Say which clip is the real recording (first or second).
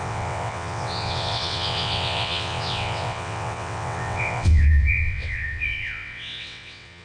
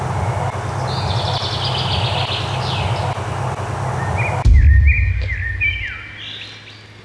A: second